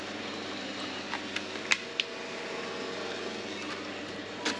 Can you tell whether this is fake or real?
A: real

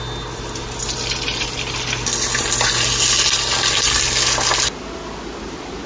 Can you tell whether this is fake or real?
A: real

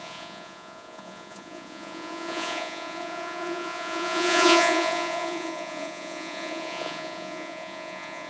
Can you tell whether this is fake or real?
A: fake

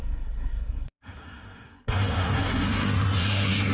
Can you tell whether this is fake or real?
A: fake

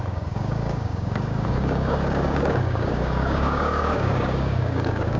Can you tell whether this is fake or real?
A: fake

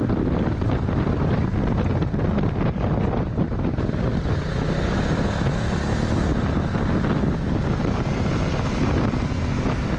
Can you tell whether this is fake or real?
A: real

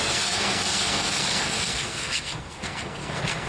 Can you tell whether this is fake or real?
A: fake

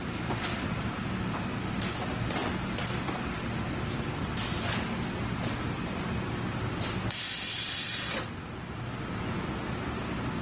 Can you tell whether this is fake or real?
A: real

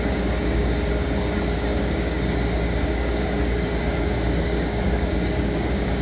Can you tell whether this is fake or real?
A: fake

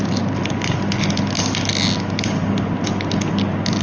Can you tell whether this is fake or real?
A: real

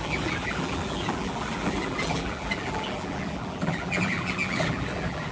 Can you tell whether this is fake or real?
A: fake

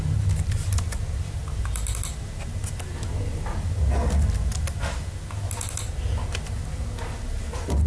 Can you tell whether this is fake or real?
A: real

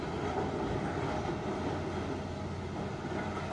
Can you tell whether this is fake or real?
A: real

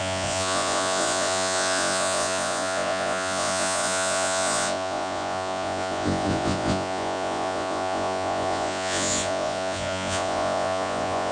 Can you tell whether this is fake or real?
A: fake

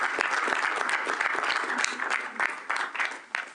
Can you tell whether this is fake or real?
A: real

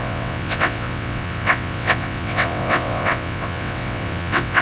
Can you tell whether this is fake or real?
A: fake